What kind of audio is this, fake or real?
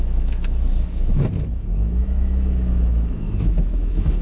fake